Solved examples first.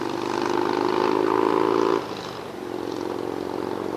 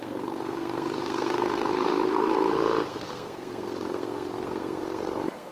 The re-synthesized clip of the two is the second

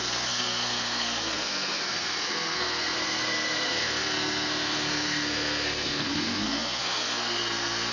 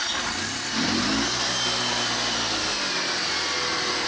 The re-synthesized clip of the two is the first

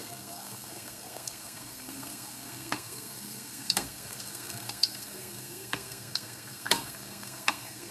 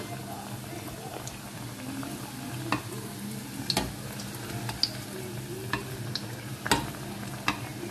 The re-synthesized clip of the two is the first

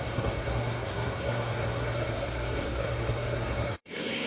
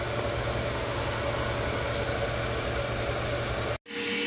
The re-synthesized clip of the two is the first